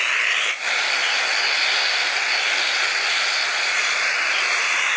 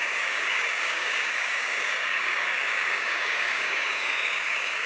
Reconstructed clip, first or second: second